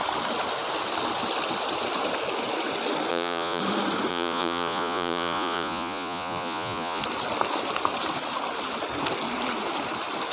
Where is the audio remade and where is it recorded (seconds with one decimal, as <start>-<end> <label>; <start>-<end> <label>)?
0.0-3.1 recorded; 3.1-3.6 remade; 3.6-4.1 recorded; 4.1-7.0 remade; 7.0-10.3 recorded